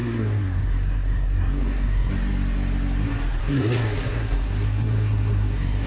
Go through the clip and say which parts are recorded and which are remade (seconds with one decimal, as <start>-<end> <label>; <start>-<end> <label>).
0.0-2.1 remade; 2.1-3.4 recorded; 3.4-5.9 remade